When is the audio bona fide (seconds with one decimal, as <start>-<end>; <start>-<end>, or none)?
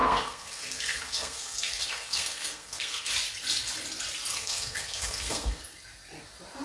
3.1-4.3; 5.6-6.6